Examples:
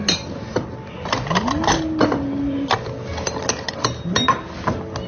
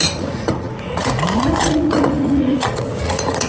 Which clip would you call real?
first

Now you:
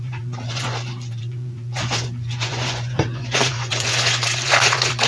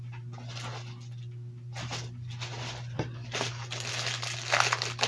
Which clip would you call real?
second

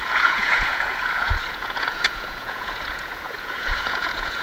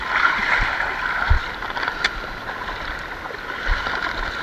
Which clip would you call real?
second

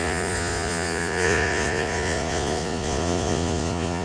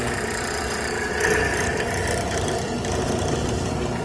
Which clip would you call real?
second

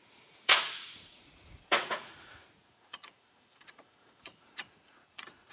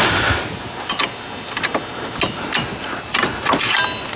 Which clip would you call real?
second